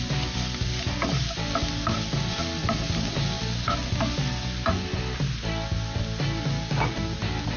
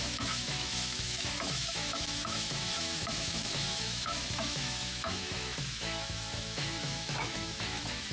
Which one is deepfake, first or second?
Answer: second